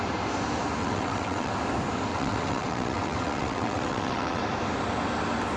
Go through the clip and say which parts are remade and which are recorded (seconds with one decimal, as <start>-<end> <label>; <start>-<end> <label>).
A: 0.0-0.8 recorded; 0.8-1.5 remade; 1.5-2.1 recorded; 2.1-4.4 remade; 4.4-5.6 recorded